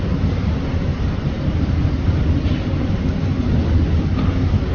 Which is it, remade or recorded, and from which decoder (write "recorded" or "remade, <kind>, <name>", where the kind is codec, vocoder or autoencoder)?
recorded